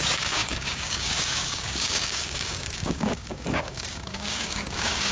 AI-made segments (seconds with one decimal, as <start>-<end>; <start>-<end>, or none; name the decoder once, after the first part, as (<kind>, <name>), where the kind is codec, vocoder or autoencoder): 0.0-5.1 (codec, DAC)